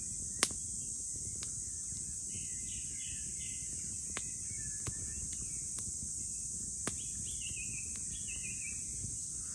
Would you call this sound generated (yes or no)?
no